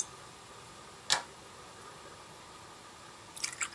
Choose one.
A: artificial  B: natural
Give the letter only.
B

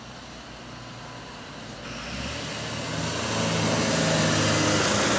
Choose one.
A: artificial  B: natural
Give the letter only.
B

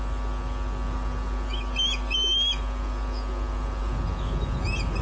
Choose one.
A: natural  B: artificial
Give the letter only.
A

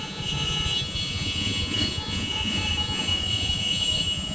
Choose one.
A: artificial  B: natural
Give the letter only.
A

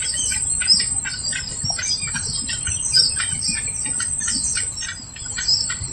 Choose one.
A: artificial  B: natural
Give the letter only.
B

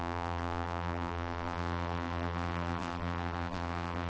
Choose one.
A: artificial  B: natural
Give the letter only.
A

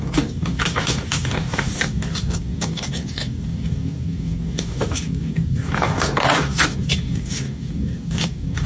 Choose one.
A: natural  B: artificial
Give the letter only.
B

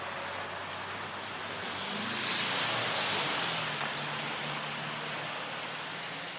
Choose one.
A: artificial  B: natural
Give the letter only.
B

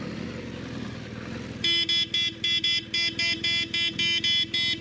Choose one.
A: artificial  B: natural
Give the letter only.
B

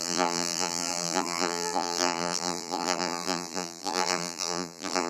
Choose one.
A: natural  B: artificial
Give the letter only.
B